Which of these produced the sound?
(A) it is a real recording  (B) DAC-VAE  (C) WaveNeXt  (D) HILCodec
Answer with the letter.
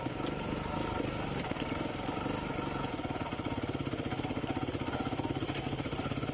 A